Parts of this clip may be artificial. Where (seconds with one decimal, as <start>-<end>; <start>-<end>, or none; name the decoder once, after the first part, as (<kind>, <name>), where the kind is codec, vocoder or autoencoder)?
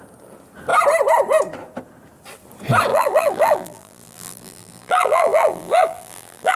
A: 2.9-6.6 (vocoder, BigVGAN v2)